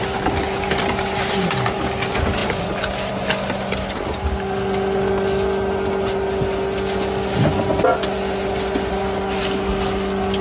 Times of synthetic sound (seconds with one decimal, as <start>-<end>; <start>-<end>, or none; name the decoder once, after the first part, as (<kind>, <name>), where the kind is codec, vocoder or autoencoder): none